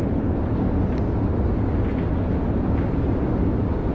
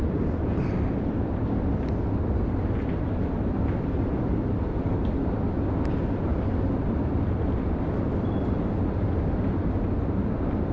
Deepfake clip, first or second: second